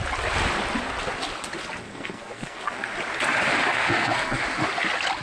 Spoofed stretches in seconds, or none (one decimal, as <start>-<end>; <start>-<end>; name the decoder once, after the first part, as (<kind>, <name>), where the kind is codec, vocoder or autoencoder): 1.8-2.9 (codec, SNAC); 3.7-4.4